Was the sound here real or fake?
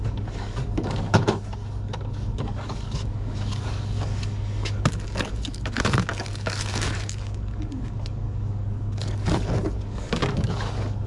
fake